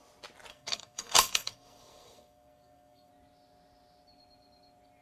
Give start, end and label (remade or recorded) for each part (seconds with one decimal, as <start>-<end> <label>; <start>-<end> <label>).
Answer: 0.0-0.5 recorded; 0.5-3.1 remade; 3.1-5.0 recorded